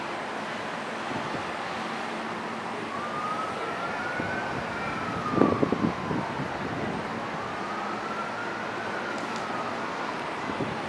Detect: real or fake real